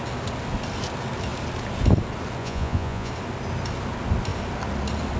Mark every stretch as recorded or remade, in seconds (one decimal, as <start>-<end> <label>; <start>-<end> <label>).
0.0-2.4 recorded; 2.4-3.1 remade; 3.1-5.2 recorded